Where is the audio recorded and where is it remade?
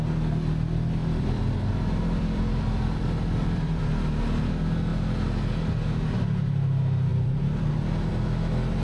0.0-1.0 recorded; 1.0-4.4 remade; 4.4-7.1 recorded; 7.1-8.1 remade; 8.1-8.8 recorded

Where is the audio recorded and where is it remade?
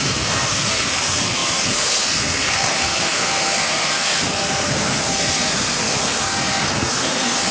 0.0-7.5 remade